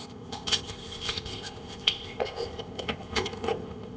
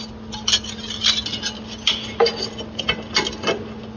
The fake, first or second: first